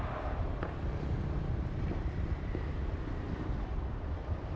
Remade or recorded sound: recorded